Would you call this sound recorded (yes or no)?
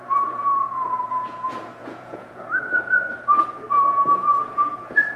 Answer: no